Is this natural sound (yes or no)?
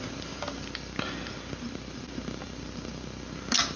yes